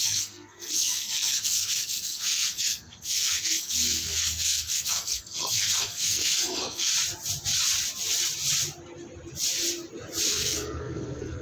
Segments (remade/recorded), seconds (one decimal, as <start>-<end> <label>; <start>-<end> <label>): 0.0-6.9 remade; 6.9-10.3 recorded; 10.3-11.4 remade